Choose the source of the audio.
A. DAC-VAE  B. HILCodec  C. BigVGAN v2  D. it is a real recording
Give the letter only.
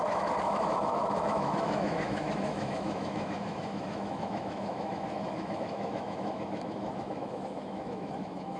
A